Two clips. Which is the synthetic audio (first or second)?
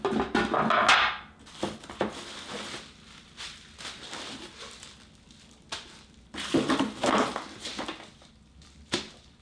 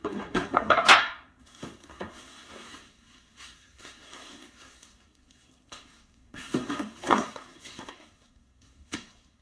second